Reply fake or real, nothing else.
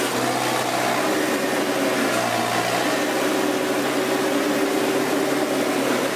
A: real